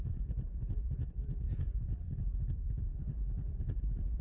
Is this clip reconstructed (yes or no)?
yes